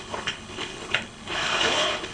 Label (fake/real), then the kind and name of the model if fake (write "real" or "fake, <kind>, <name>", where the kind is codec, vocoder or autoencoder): fake, codec, HILCodec